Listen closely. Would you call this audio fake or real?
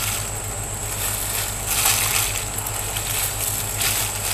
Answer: real